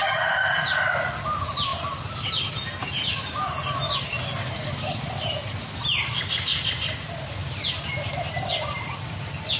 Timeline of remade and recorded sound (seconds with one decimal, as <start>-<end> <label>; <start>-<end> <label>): 0.0-9.6 recorded